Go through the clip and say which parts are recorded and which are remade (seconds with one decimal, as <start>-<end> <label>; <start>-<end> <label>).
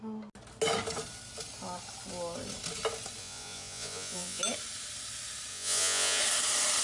0.0-3.2 recorded; 3.2-4.4 remade; 4.4-5.5 recorded; 5.5-6.2 remade; 6.2-6.8 recorded